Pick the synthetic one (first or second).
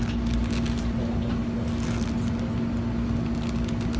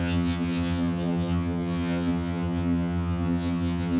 second